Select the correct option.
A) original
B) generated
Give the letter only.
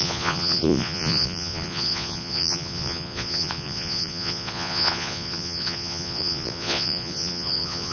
B